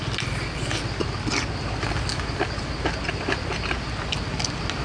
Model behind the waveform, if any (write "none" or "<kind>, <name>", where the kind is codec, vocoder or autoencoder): none